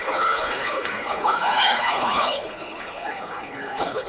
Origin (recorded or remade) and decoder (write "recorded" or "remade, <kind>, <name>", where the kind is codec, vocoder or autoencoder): remade, codec, HILCodec